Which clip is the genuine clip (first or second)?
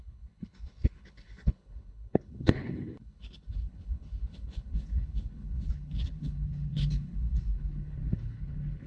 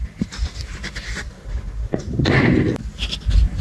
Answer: second